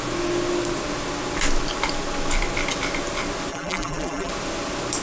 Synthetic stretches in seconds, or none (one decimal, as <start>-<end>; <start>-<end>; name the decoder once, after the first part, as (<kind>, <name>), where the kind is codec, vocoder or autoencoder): 3.5-4.3 (vocoder, BigVGAN v2)